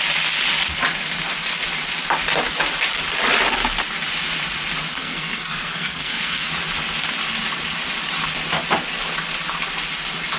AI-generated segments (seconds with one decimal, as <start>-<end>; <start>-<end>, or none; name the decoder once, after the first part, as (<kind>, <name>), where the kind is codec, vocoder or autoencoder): 4.9-6.5 (codec, SNAC)